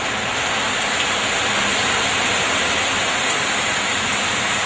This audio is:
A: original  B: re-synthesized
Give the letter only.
A